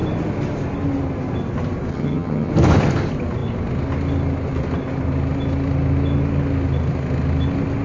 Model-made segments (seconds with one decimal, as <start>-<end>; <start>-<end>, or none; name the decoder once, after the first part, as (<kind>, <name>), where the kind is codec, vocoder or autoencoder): 1.9-2.5 (vocoder, HiFi-GAN)